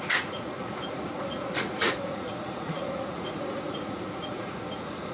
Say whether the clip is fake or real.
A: fake